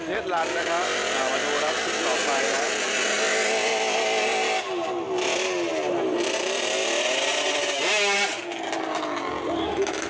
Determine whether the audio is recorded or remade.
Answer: recorded